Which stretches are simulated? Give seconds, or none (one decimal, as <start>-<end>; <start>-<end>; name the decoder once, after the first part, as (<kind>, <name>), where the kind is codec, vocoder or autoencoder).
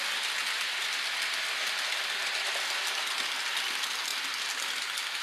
none